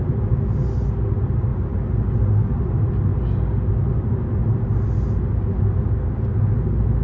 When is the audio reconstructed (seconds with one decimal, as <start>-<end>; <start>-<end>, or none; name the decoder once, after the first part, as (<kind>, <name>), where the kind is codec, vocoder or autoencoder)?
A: none